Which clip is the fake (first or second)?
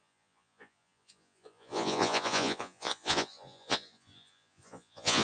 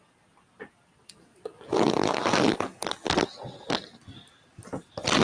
first